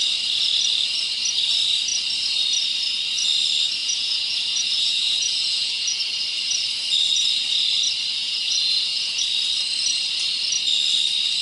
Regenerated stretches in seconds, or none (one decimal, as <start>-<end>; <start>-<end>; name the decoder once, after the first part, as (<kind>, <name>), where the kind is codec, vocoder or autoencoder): 3.8-6.0 (vocoder, Vocos); 8.2-9.2

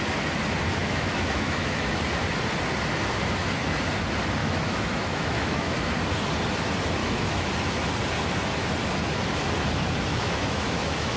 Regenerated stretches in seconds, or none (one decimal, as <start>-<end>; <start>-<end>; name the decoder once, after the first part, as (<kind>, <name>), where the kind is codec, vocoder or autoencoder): 0.8-2.0 (autoencoder, DAC-VAE); 4.4-5.9; 7.0-7.5; 10.1-11.2

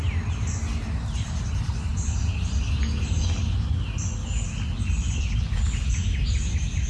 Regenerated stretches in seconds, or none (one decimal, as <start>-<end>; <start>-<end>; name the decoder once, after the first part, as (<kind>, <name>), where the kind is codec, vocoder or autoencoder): none

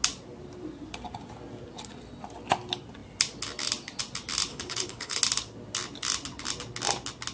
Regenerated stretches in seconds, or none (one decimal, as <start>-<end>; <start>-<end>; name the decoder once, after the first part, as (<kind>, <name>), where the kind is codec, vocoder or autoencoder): 4.5-5.2 (codec, HILCodec)

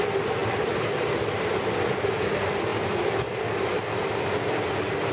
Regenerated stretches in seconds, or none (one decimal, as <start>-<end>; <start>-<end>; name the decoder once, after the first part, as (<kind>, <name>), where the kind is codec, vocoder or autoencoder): none

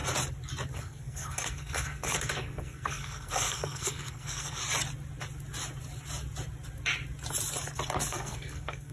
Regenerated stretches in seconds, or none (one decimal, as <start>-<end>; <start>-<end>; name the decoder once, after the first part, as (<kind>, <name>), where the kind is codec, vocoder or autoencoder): 0.7-4.6 (codec, SNAC); 8.1-8.9